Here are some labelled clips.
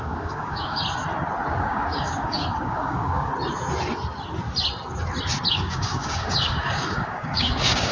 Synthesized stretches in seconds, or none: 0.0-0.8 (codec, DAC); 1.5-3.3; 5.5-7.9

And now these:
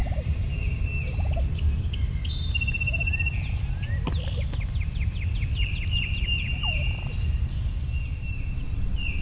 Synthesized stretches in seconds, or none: none

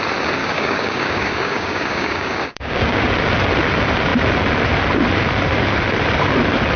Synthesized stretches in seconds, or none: 0.4-3.1 (codec, DAC)